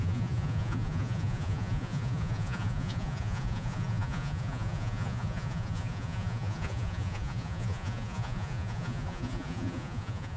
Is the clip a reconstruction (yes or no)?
yes